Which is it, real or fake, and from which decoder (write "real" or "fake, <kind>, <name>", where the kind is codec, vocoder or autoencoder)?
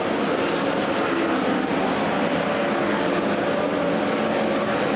real